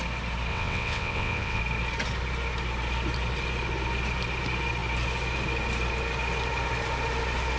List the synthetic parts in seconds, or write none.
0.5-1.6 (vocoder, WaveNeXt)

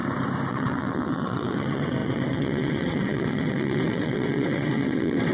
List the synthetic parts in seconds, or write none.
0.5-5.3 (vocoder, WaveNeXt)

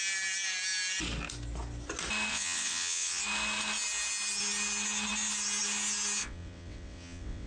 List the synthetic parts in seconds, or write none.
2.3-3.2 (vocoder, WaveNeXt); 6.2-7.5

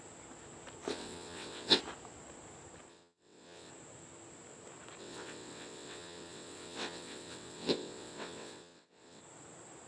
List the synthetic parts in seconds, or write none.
0.9-1.8 (vocoder, WaveNeXt); 2.9-3.7; 5.0-9.2

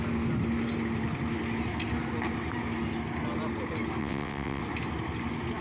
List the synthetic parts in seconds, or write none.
4.0-4.6 (vocoder, WaveNeXt)